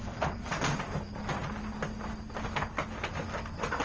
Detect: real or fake real